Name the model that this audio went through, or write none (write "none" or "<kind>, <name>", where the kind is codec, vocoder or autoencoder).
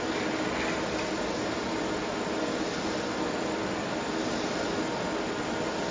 none